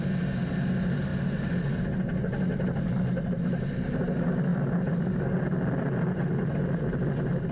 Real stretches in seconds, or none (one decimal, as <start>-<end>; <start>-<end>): 0.0-7.5

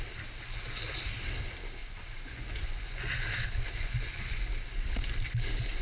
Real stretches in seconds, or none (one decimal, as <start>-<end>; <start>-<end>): 0.0-1.8; 3.1-3.8; 4.4-5.8